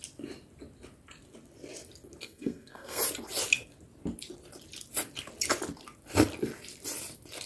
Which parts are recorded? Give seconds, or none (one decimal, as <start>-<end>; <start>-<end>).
0.0-2.2; 3.0-7.5